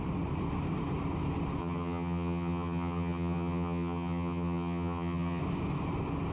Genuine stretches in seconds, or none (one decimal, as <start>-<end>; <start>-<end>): 0.0-1.6; 5.4-6.3